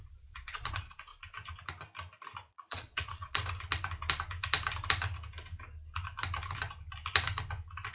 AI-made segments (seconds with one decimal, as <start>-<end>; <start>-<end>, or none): 0.0-1.1; 2.5-3.4